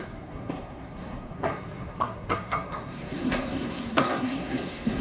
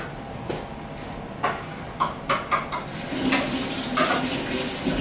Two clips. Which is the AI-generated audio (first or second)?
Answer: first